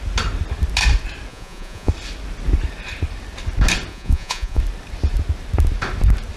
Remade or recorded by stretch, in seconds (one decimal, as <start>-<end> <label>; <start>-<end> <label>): 0.0-1.3 recorded; 1.3-1.9 remade; 1.9-3.9 recorded; 3.9-4.6 remade; 4.6-6.4 recorded